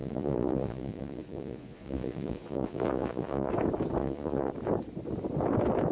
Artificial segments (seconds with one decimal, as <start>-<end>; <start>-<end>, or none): 0.0-3.5; 4.0-4.5